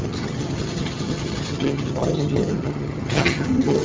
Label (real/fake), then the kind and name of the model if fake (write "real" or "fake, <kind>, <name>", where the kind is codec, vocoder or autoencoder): fake, vocoder, HiFi-GAN